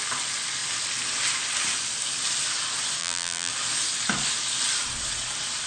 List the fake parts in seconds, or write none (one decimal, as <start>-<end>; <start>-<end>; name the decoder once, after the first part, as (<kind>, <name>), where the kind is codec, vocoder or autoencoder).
3.0-3.5 (vocoder, BigVGAN v2)

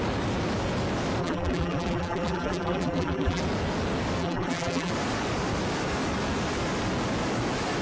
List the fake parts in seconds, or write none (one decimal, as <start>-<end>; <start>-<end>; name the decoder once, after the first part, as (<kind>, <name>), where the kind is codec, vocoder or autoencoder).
1.2-3.4 (vocoder, BigVGAN v2); 4.2-4.9

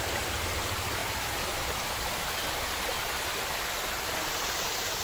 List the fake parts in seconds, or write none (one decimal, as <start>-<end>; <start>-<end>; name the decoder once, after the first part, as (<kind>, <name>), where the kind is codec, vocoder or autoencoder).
none

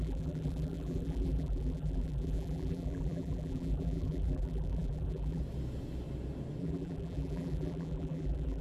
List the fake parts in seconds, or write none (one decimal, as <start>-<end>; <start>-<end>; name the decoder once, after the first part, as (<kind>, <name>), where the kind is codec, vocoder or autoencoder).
0.0-5.4 (vocoder, BigVGAN v2); 6.6-8.6

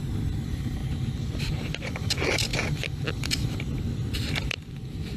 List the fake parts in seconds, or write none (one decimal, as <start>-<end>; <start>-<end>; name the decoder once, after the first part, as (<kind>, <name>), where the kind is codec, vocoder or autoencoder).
0.0-0.8 (vocoder, BigVGAN v2); 1.5-2.5; 4.3-5.2